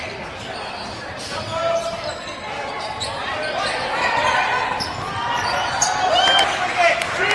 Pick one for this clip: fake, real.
real